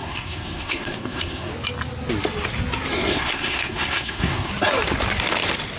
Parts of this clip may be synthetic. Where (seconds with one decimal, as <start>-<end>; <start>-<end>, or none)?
0.0-1.5; 3.1-4.5